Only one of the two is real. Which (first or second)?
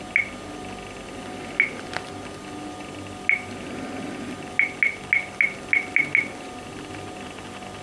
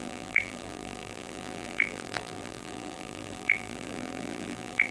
first